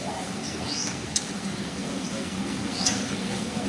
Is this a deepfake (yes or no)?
yes